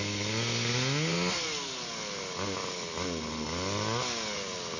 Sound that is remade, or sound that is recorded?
recorded